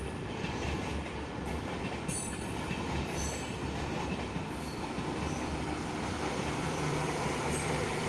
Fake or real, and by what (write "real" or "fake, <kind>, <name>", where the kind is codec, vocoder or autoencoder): fake, vocoder, BigVGAN v2